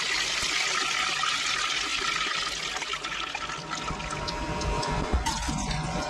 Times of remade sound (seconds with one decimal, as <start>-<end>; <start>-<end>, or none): 4.8-6.1